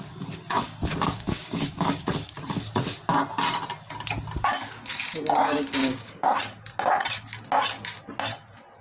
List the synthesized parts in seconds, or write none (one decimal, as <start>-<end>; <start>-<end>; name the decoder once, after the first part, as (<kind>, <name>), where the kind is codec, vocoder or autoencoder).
0.9-2.0 (codec, DAC); 5.8-6.4